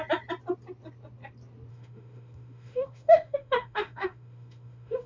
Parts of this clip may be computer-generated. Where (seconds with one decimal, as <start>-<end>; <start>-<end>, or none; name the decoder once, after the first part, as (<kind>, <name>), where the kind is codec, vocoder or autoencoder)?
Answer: 1.7-5.1 (autoencoder, DAC-VAE)